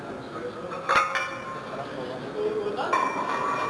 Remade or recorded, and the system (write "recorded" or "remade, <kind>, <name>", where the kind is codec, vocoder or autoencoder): recorded